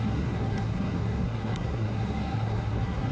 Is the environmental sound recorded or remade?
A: remade